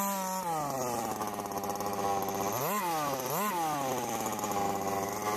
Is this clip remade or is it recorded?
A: recorded